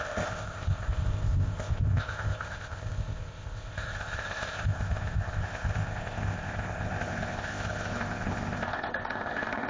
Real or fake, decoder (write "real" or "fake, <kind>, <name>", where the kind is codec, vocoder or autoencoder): fake, codec, ZipCodec